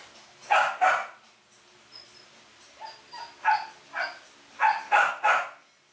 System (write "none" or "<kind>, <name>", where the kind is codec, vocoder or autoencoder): none